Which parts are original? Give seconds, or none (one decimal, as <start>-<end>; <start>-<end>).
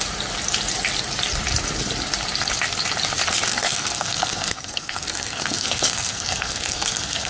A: 0.0-3.5